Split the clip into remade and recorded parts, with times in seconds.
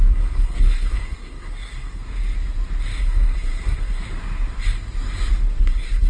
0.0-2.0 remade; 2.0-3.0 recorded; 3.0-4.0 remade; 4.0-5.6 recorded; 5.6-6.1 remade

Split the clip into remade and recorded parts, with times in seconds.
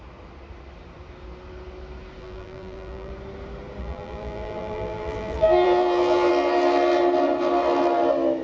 0.0-2.2 recorded; 2.2-3.1 remade; 3.1-3.8 recorded; 3.8-6.3 remade; 6.3-8.4 recorded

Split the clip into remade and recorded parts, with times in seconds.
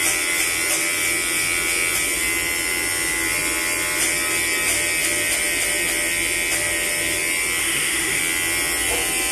0.0-7.6 recorded; 7.6-8.2 remade; 8.2-9.3 recorded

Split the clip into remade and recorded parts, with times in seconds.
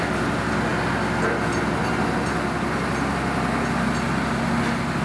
0.0-5.0 recorded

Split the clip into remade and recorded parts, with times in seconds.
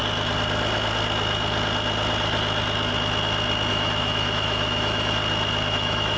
0.0-3.7 recorded; 3.7-5.2 remade; 5.2-5.7 recorded; 5.7-6.2 remade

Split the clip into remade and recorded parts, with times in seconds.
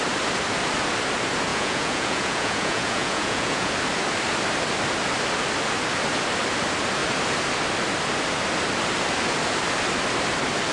0.0-1.5 recorded; 1.5-3.7 remade; 3.7-10.7 recorded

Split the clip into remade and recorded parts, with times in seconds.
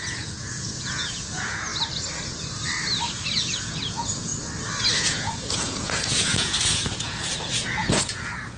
0.0-1.7 remade; 1.7-3.4 recorded; 3.4-4.3 remade; 4.3-5.0 recorded; 5.0-8.6 remade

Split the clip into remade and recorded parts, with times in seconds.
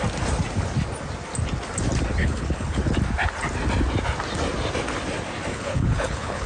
0.0-2.2 recorded; 2.2-2.8 remade; 2.8-5.5 recorded; 5.5-6.5 remade